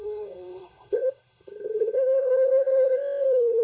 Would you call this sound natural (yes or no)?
no